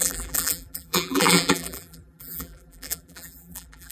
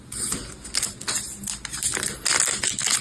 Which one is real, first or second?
second